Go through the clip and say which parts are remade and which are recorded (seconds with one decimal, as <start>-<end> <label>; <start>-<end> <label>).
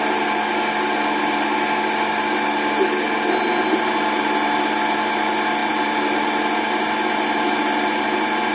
0.0-8.5 recorded